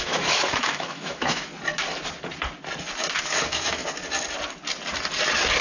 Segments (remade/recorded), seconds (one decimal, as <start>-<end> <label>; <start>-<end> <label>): 0.0-1.5 remade; 1.5-3.2 recorded; 3.2-3.8 remade; 3.8-5.6 recorded